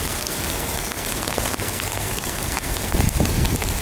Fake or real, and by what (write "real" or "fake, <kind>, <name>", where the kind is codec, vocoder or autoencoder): fake, codec, SNAC